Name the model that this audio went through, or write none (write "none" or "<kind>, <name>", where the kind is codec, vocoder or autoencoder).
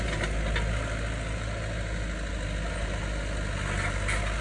none